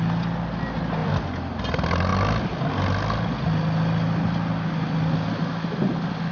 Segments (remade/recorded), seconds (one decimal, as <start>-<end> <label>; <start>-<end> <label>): 0.0-6.3 recorded